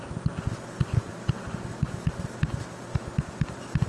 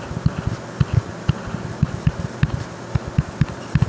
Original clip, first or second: first